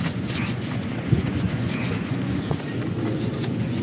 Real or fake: fake